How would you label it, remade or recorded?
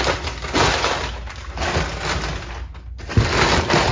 recorded